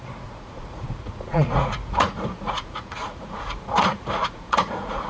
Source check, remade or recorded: remade